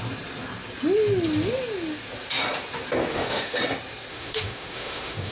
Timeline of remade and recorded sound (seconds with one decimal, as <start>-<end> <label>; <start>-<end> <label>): 0.0-3.1 recorded; 3.1-3.6 remade; 3.6-4.1 recorded; 4.1-5.3 remade